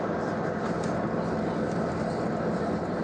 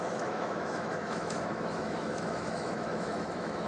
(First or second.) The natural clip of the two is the first